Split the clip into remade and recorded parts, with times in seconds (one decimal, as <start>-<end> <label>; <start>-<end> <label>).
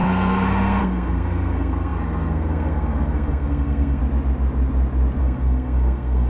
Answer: 0.0-4.0 remade; 4.0-5.2 recorded; 5.2-6.3 remade